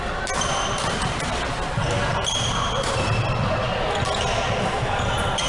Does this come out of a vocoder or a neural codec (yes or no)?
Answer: no